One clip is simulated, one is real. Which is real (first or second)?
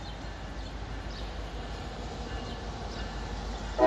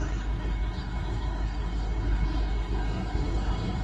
first